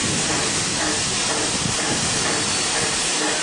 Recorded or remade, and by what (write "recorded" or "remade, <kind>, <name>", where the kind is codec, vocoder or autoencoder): recorded